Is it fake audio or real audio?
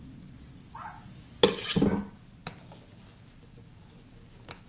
real